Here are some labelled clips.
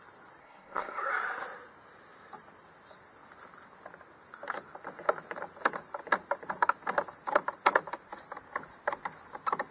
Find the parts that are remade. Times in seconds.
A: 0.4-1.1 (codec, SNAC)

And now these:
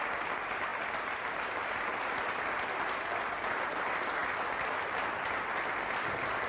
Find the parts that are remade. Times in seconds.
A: none